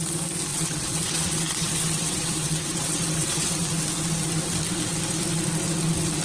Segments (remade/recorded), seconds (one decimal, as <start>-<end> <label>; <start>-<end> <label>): 0.0-0.5 recorded; 0.5-3.5 remade; 3.5-6.2 recorded